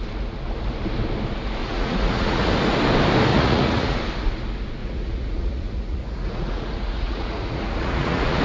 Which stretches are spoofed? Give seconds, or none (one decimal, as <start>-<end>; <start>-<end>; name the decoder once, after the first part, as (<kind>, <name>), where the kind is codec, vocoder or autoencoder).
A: 1.6-2.5 (vocoder, Vocos); 3.3-4.0; 4.8-8.4